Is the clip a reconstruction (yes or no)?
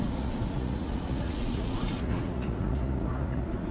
yes